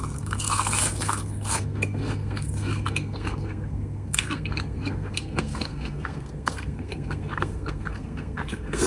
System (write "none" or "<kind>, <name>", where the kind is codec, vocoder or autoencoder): codec, SNAC